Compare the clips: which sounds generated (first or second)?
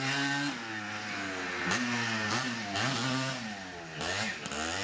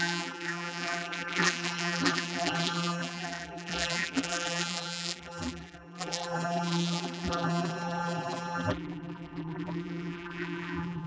second